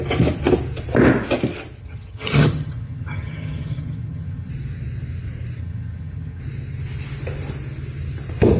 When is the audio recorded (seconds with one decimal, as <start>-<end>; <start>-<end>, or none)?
0.0-1.8; 4.5-5.6; 6.4-8.6